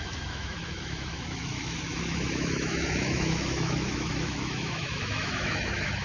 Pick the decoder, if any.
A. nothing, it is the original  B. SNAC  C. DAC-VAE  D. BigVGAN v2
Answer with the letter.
C